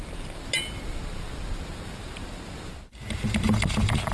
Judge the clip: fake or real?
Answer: fake